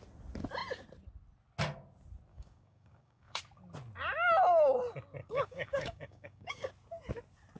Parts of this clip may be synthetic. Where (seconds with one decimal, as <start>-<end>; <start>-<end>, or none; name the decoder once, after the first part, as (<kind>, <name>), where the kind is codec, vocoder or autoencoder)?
2.3-3.4 (codec, DAC); 5.2-6.7